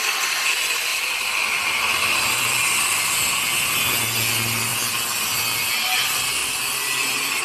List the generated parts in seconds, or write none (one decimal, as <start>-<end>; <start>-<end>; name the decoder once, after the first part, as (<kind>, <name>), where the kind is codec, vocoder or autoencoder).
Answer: none